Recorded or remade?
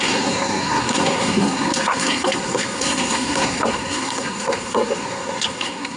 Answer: remade